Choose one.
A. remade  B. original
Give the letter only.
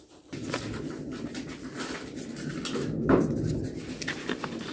B